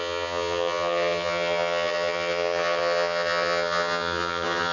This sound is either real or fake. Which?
fake